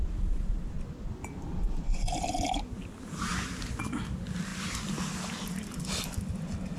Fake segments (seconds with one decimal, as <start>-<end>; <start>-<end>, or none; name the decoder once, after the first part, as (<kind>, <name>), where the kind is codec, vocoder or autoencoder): none